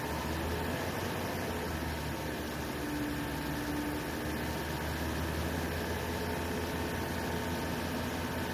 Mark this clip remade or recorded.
recorded